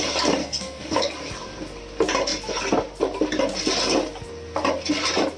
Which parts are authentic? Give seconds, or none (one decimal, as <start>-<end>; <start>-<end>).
0.0-0.4; 1.0-5.4